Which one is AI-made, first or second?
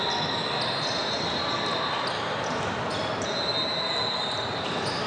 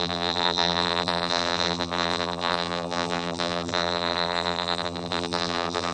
second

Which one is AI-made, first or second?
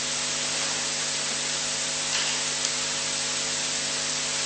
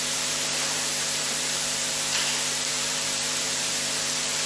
second